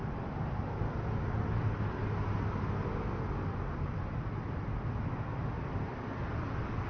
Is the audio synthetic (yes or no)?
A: no